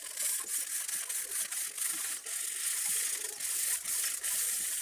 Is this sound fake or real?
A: real